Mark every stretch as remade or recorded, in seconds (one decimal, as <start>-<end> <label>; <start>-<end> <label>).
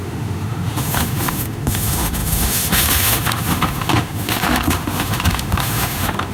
0.0-6.3 remade